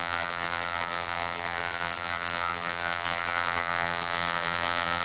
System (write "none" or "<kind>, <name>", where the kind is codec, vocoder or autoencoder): vocoder, BigVGAN v2